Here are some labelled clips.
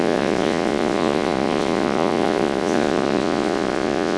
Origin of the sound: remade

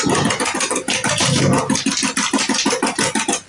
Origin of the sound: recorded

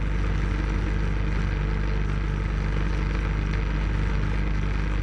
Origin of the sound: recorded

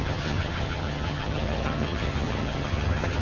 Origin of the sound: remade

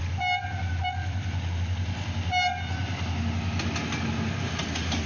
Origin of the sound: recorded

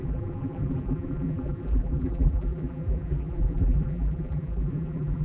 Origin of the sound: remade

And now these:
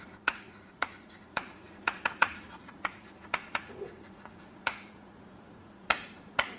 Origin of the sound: remade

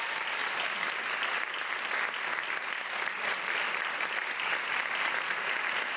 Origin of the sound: recorded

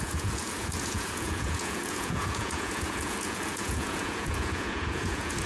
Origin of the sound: remade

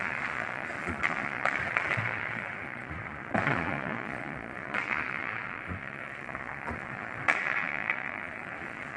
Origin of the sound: remade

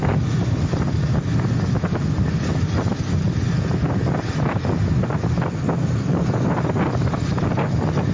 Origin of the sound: recorded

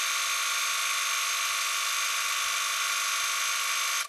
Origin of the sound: recorded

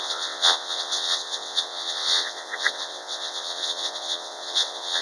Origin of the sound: remade